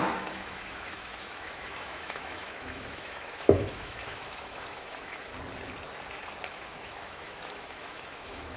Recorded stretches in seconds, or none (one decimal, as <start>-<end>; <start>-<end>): 5.3-6.5